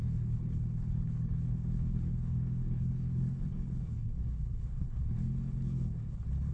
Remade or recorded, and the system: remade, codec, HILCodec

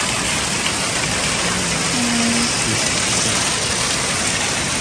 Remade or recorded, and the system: recorded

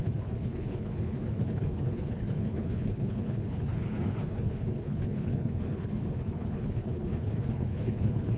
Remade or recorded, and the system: remade, codec, HILCodec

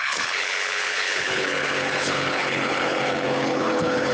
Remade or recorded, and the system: remade, codec, HILCodec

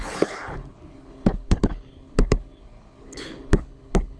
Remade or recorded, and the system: remade, codec, HILCodec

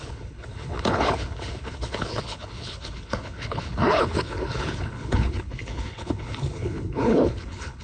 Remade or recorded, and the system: remade, codec, HILCodec